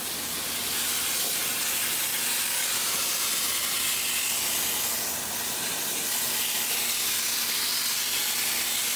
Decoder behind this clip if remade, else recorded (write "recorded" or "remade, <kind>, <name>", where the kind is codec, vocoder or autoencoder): recorded